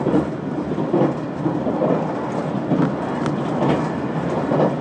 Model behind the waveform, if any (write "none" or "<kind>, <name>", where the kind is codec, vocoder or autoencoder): none